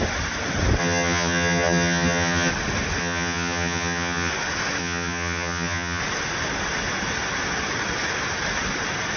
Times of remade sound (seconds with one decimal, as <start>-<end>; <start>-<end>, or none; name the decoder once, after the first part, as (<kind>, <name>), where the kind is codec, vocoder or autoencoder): 0.8-2.5 (vocoder, HiFi-GAN); 3.0-4.3; 4.8-6.0